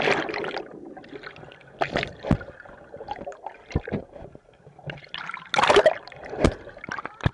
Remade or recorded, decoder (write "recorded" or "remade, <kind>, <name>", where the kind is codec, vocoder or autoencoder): recorded